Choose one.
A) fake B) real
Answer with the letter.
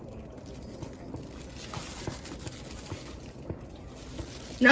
B